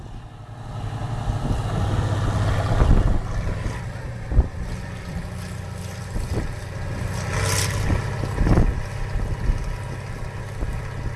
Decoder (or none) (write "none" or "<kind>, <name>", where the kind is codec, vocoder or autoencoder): none